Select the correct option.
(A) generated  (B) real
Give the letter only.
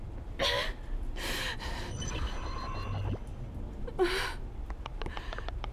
B